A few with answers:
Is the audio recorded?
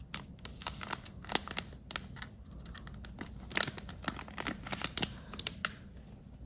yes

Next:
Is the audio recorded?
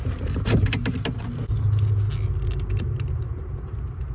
yes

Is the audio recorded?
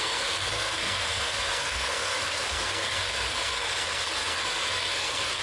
no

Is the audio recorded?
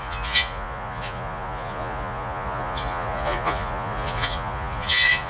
no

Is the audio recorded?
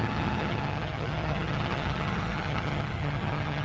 no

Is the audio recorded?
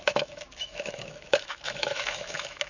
no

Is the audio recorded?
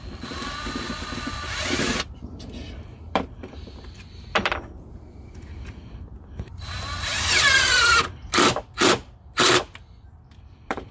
no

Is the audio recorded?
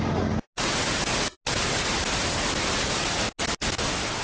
yes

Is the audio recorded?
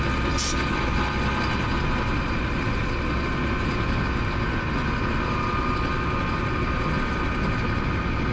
yes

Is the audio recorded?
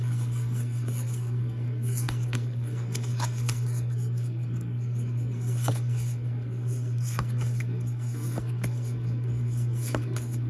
no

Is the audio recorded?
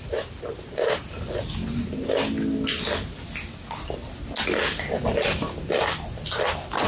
yes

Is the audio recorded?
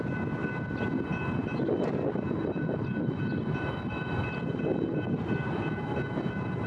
yes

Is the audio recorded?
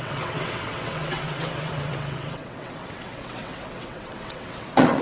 no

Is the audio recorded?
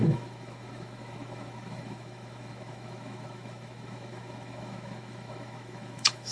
no